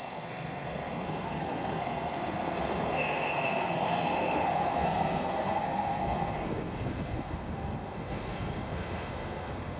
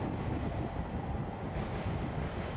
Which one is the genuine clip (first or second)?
second